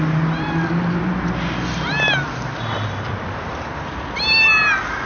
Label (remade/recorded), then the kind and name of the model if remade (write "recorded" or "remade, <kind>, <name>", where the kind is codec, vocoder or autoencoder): recorded